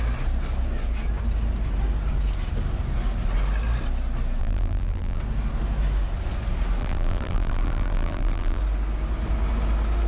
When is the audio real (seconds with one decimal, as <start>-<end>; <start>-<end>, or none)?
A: 0.0-4.4; 5.2-6.8; 8.6-10.1